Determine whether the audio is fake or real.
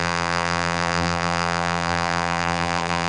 fake